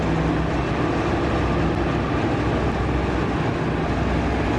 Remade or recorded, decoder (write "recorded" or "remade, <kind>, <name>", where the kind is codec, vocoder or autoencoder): recorded